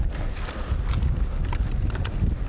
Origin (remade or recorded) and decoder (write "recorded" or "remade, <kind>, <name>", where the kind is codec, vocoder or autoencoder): recorded